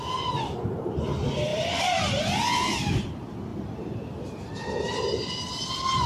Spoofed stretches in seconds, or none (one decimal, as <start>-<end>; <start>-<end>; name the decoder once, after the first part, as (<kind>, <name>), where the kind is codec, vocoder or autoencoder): 1.5-2.2 (vocoder, BigVGAN v2); 3.5-4.5